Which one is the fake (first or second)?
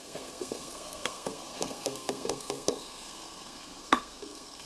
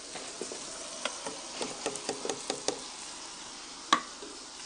first